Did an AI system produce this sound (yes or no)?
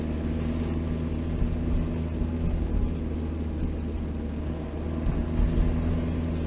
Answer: no